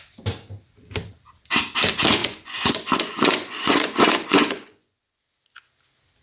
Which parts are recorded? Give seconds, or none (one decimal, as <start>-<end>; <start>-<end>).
0.0-2.2; 5.2-6.2